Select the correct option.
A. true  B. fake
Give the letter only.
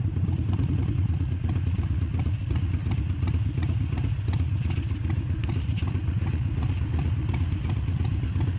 B